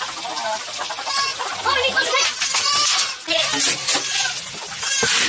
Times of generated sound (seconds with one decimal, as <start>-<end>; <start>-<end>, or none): none